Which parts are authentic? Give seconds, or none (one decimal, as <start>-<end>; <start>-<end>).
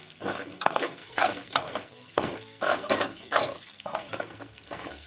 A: none